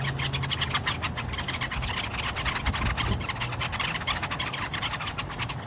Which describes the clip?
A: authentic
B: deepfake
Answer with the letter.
A